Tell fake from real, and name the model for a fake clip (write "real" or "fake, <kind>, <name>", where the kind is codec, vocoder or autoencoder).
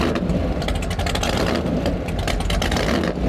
real